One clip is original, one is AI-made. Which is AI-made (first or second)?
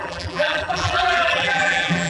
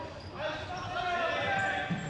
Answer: first